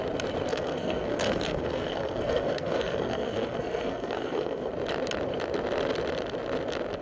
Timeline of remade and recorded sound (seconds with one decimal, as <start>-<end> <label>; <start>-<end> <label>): 0.0-0.5 recorded; 0.5-4.7 remade; 4.7-7.0 recorded